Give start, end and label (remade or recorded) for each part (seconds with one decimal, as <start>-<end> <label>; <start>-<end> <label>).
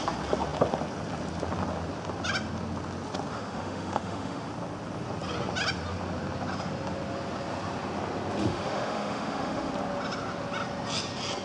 0.0-3.3 recorded; 3.3-4.5 remade; 4.5-8.4 recorded; 8.4-9.7 remade; 9.7-11.4 recorded